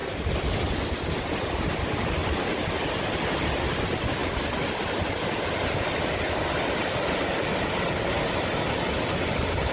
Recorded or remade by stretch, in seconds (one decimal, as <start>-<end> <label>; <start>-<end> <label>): 0.0-9.7 recorded

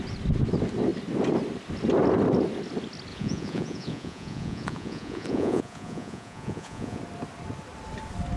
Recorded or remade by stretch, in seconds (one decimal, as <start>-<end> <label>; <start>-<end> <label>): 0.0-3.1 recorded; 3.1-7.0 remade; 7.0-8.4 recorded

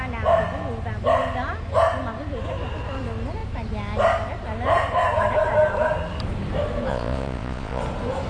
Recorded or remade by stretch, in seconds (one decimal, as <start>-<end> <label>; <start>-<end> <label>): 0.0-6.9 recorded; 6.9-7.8 remade; 7.8-8.3 recorded

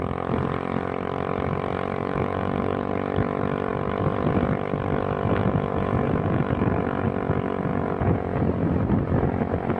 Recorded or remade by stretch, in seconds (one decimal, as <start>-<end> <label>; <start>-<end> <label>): 0.0-2.0 recorded; 2.0-2.9 remade; 2.9-5.4 recorded; 5.4-6.6 remade; 6.6-7.7 recorded; 7.7-8.4 remade; 8.4-9.8 recorded

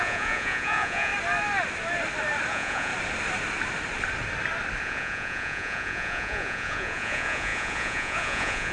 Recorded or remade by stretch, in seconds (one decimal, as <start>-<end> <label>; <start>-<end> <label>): 0.0-1.1 remade; 1.1-2.5 recorded; 2.5-2.9 remade; 2.9-4.8 recorded; 4.8-8.7 remade

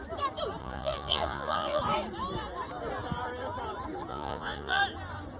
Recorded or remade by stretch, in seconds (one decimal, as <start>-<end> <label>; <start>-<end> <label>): 0.0-0.6 recorded; 0.6-1.8 remade; 1.8-4.1 recorded; 4.1-4.8 remade; 4.8-5.4 recorded